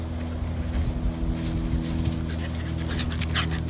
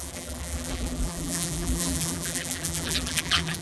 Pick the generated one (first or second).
second